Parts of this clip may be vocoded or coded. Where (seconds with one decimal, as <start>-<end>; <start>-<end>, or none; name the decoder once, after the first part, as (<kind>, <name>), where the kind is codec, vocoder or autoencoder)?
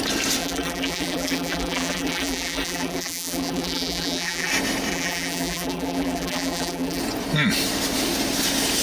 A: 0.4-4.5 (vocoder, BigVGAN v2); 4.9-7.0